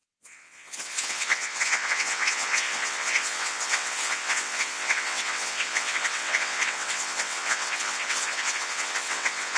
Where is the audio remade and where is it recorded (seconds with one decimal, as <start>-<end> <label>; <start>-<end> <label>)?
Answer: 0.0-9.6 remade